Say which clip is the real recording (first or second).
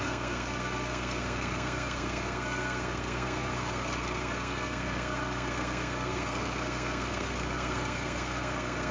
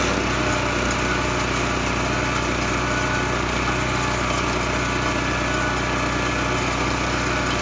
second